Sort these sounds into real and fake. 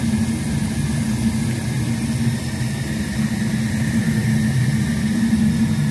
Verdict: real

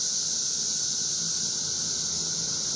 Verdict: real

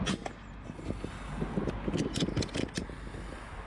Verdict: real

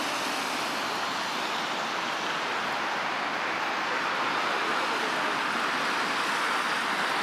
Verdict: real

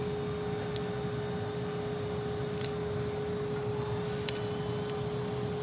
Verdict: real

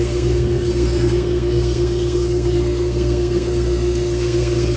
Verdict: fake